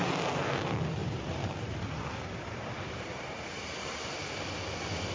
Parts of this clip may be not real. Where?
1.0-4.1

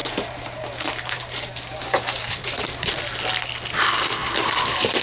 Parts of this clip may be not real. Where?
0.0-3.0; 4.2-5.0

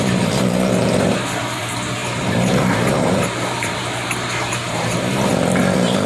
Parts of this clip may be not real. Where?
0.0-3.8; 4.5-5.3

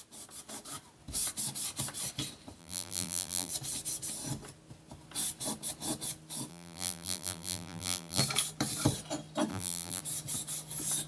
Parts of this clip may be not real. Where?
2.6-3.5; 6.5-8.2; 9.5-10.0

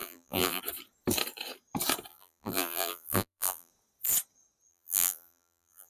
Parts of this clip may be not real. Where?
0.0-0.6; 2.1-3.7; 4.7-5.9